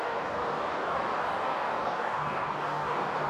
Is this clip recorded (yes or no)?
no